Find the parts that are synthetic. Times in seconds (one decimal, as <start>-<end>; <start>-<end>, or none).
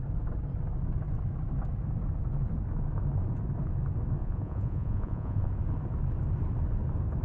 4.2-5.5